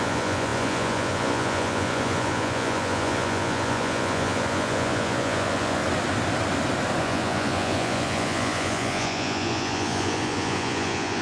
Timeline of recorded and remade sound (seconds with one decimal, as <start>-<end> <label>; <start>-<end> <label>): 0.0-5.8 remade; 5.8-7.0 recorded; 7.0-11.2 remade